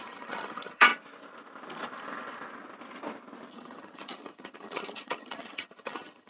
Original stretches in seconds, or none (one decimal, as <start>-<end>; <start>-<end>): 0.9-3.5

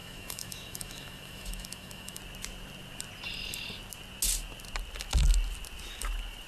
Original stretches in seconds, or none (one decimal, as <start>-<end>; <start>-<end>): 2.2-6.5